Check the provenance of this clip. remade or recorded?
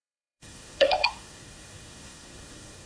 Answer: remade